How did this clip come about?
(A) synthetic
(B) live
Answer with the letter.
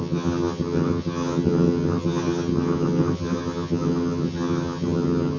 A